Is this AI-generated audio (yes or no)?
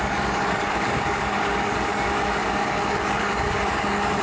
yes